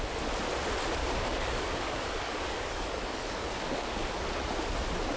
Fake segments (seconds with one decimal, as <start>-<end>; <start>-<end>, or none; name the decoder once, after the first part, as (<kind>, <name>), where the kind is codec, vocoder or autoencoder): 1.0-4.1 (codec, DAC)